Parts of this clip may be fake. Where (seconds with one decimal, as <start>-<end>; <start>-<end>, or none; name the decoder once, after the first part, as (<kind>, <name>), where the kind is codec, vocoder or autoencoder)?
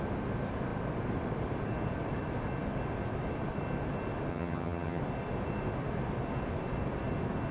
4.3-5.0 (vocoder, HiFi-GAN)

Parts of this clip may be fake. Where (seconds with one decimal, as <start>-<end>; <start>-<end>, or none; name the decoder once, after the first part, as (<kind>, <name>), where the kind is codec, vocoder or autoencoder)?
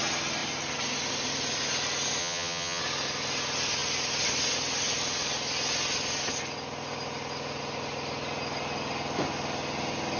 2.2-2.8 (vocoder, HiFi-GAN)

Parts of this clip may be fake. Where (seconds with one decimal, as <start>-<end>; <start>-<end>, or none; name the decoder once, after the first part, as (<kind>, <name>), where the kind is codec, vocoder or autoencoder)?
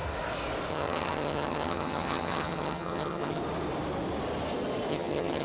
0.7-3.4 (vocoder, HiFi-GAN); 4.9-5.4